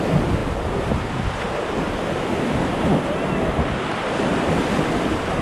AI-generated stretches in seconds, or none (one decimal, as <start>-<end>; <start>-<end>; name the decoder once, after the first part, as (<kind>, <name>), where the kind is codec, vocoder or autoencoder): none